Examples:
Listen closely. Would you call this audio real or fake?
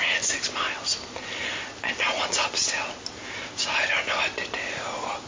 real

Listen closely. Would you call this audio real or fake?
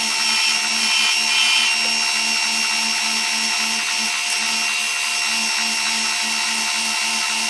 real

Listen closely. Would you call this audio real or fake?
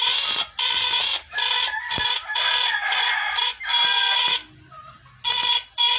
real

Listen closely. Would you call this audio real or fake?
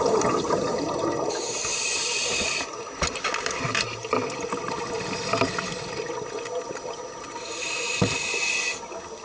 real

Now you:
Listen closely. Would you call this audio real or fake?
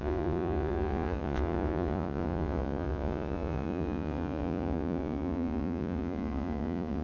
fake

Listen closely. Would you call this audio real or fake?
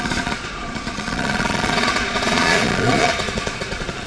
fake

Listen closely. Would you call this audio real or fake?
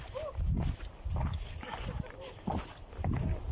real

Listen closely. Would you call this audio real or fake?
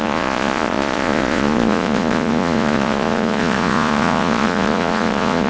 fake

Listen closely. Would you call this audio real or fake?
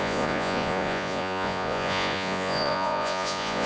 fake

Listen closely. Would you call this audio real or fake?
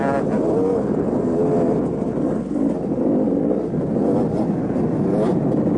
real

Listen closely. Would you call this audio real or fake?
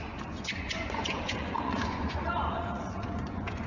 fake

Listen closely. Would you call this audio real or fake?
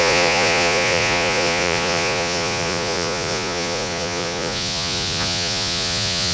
fake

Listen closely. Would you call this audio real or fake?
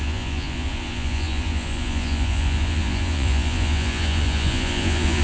fake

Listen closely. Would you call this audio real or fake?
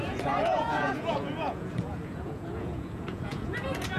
fake